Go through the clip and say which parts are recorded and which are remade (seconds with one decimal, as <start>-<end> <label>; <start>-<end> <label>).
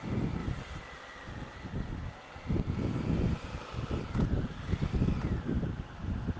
0.0-0.4 recorded; 0.4-1.4 remade; 1.4-6.4 recorded